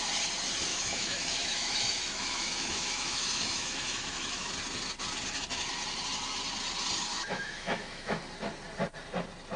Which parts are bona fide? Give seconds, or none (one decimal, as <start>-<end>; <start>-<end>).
0.0-0.7; 4.5-7.1; 8.2-9.6